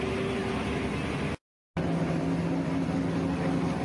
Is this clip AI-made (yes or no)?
no